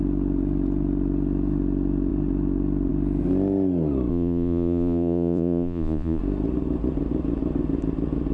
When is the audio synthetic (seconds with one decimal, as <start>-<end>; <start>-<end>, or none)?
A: 4.1-6.2